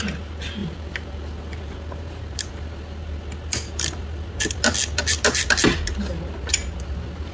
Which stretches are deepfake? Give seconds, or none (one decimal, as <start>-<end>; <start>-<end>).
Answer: 0.6-2.5